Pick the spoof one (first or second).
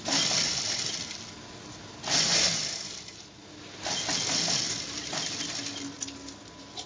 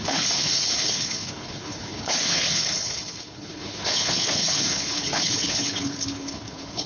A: second